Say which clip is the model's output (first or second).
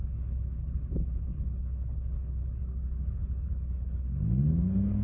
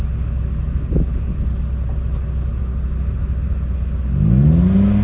first